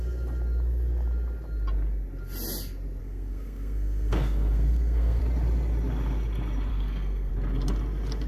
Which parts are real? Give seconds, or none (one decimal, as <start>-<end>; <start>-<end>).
0.0-3.0; 5.2-6.7; 7.3-8.3